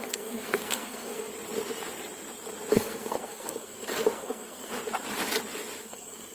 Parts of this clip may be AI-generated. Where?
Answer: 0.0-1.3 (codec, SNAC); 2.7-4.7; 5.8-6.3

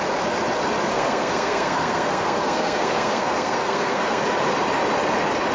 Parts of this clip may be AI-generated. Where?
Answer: 0.9-4.2 (codec, SNAC)

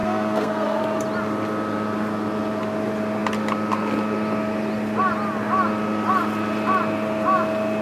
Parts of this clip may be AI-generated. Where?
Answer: 0.0-0.8 (codec, SNAC)

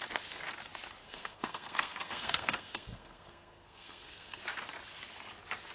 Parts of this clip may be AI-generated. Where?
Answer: 1.0-4.4 (codec, SNAC)

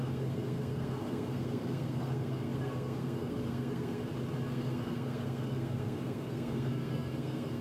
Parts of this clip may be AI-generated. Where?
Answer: 0.0-4.0 (codec, SNAC); 4.5-7.6